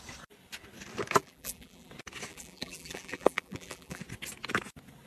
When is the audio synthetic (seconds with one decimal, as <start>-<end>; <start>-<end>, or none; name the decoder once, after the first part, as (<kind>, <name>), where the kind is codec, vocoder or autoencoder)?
1.2-1.9 (vocoder, BigVGAN v2); 2.3-4.0